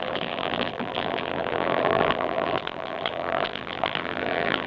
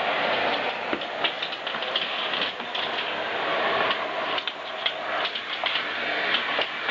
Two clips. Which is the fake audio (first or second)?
first